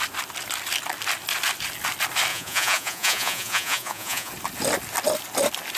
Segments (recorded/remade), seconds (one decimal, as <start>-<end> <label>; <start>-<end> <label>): 0.0-2.3 recorded; 2.3-4.3 remade; 4.3-5.8 recorded